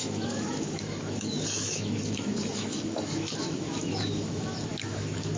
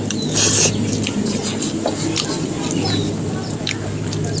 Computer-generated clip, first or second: first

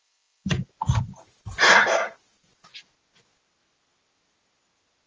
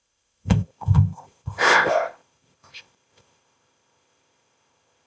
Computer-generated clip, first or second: second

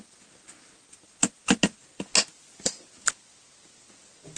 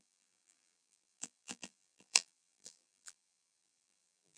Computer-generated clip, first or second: second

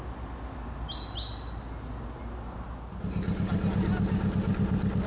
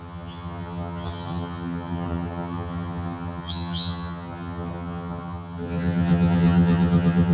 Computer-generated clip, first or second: second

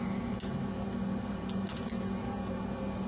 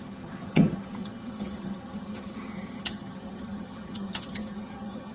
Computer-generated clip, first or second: second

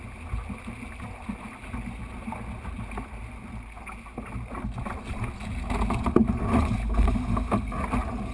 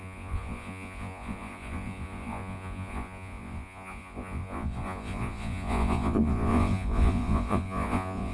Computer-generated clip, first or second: second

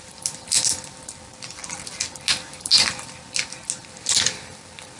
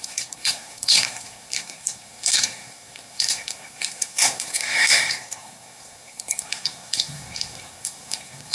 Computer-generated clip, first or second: second